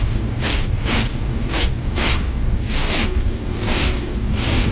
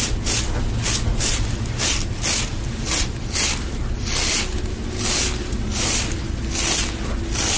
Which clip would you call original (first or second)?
second